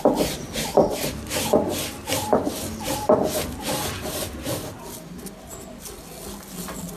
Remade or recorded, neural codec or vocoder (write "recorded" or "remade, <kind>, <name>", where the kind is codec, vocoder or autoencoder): recorded